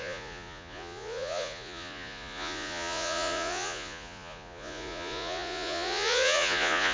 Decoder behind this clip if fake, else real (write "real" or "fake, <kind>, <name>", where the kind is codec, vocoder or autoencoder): fake, vocoder, Vocos